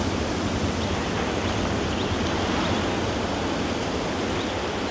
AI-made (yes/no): no